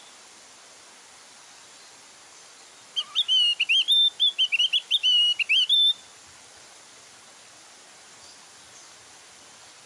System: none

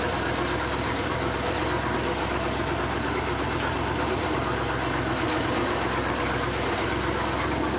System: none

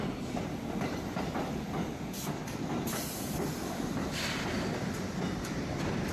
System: vocoder, BigVGAN v2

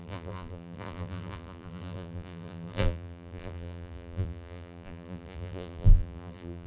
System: vocoder, BigVGAN v2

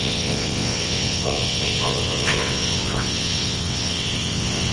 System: vocoder, WaveNeXt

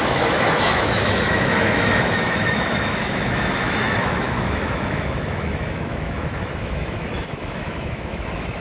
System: autoencoder, DAC-VAE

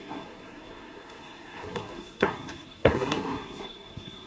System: codec, SNAC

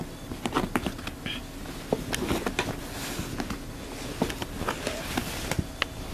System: none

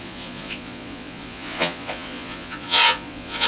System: vocoder, Vocos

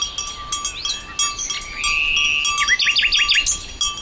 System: none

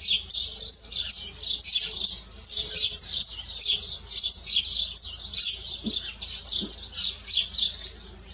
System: none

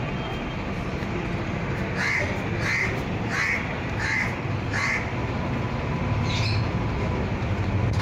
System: none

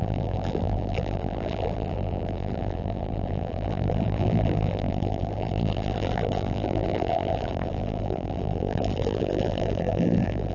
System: vocoder, BigVGAN v2